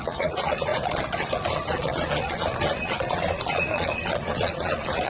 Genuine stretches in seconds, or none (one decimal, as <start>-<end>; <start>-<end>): none